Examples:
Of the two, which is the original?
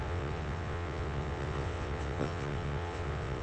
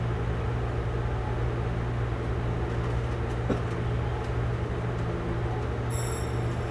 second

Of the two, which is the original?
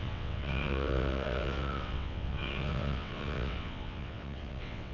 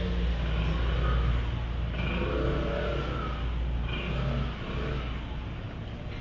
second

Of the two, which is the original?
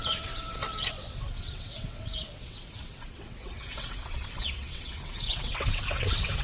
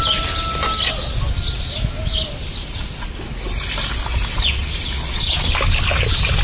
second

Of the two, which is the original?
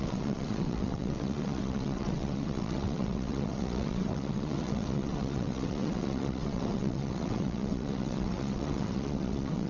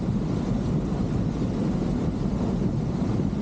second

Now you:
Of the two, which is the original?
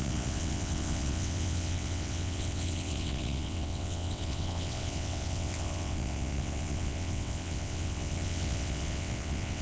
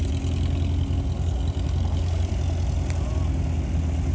second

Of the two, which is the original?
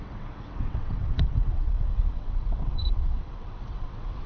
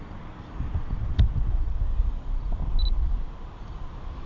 second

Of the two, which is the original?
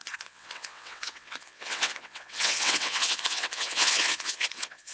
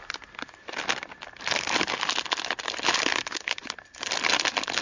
second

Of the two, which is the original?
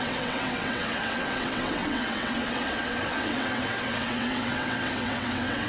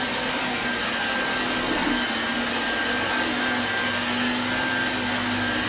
second